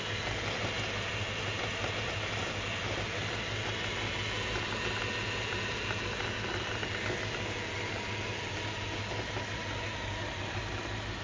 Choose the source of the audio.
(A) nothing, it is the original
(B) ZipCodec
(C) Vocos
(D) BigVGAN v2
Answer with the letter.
A